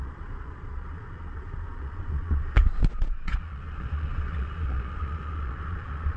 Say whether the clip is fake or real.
fake